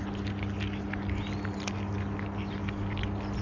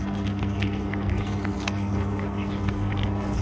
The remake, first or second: second